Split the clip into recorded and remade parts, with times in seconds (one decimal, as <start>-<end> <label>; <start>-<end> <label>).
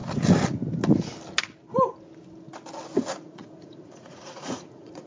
0.0-3.1 recorded; 3.1-5.1 remade